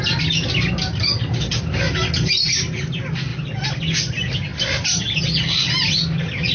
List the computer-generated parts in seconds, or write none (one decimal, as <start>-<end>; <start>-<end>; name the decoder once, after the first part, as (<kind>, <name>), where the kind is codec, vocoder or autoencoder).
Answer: none